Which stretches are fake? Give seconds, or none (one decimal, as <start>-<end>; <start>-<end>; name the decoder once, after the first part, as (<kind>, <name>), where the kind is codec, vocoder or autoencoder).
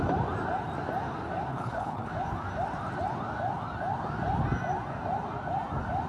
1.5-2.1 (codec, HILCodec)